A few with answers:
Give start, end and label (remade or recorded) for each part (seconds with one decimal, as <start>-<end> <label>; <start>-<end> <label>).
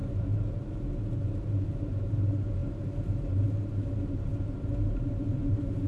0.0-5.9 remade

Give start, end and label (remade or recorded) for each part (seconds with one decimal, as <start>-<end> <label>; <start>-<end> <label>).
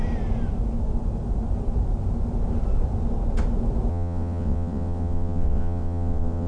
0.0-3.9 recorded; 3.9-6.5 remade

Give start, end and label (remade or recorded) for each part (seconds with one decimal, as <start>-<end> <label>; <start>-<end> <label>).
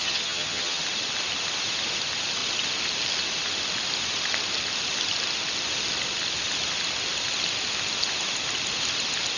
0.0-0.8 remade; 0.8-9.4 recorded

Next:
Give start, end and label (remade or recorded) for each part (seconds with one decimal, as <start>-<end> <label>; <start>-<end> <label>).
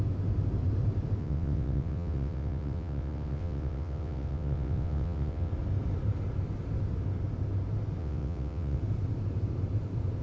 0.0-1.2 recorded; 1.2-5.5 remade; 5.5-8.0 recorded; 8.0-8.8 remade; 8.8-10.2 recorded